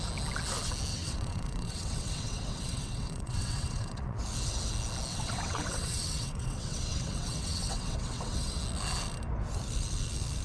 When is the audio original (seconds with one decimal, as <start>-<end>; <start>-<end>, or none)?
0.0-0.9; 4.2-5.1; 8.6-10.4